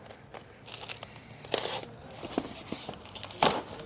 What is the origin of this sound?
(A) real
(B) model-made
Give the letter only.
A